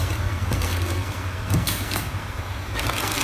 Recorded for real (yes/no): no